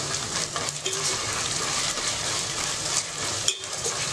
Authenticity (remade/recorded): remade